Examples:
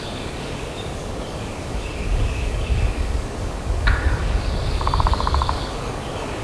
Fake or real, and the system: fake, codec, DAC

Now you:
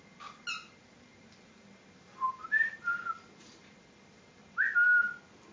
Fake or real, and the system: real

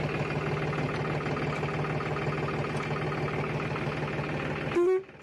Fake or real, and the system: real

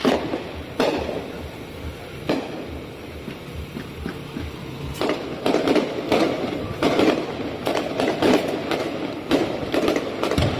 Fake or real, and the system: fake, vocoder, BigVGAN v2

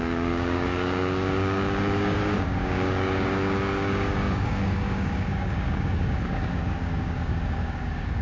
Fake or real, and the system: fake, codec, DAC